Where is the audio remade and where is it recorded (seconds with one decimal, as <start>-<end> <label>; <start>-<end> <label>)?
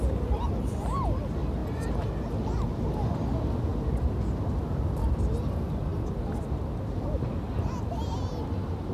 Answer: 0.0-8.9 recorded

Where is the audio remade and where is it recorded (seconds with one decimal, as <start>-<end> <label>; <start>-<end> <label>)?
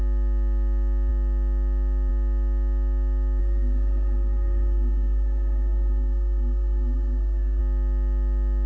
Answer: 0.0-3.4 recorded; 3.4-7.6 remade; 7.6-8.7 recorded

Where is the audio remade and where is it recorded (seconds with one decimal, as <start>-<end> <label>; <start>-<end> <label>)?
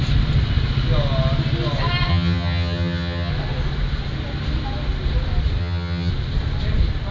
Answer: 0.0-2.1 recorded; 2.1-3.3 remade; 3.3-5.6 recorded; 5.6-6.1 remade; 6.1-7.1 recorded